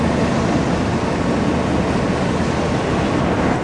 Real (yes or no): yes